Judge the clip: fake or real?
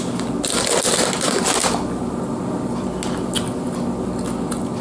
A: real